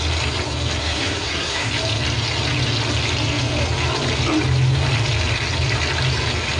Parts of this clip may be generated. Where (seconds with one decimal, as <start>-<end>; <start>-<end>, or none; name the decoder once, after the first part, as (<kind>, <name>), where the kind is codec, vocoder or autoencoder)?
0.8-1.7 (codec, SNAC)